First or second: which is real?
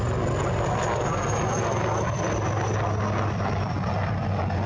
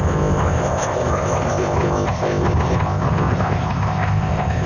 first